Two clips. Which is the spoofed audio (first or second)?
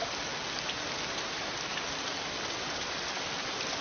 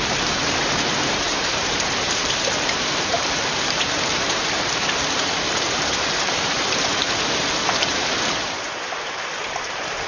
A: second